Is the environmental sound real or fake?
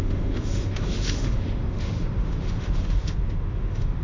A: fake